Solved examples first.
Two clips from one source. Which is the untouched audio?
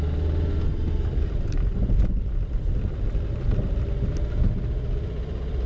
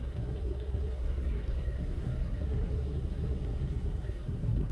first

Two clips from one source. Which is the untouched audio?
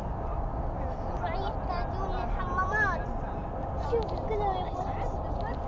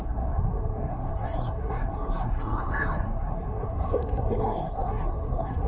first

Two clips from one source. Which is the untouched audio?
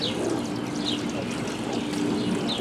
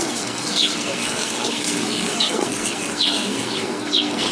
first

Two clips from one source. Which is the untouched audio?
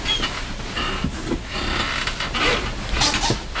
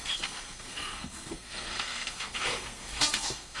first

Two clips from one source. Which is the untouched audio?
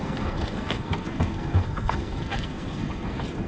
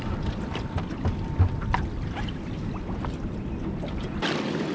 second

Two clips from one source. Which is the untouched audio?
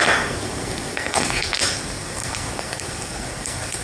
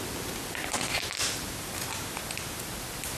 second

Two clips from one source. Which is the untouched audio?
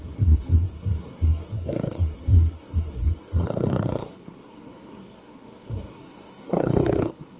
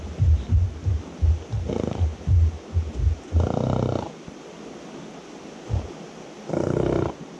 second